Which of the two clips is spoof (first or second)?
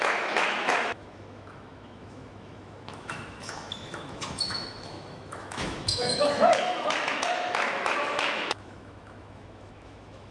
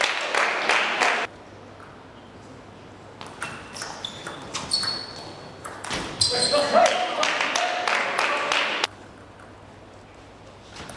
first